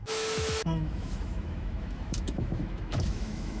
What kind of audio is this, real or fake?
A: fake